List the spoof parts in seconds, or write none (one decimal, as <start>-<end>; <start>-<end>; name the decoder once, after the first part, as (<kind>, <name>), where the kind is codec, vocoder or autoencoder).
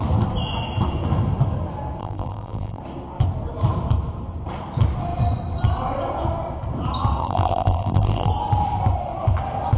2.0-2.8 (vocoder, BigVGAN v2); 7.2-8.3